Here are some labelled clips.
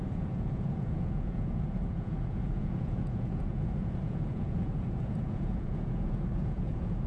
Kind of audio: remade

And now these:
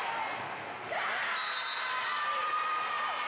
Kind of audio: recorded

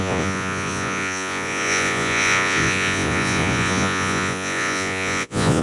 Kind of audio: remade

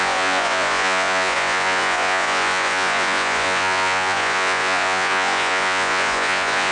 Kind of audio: remade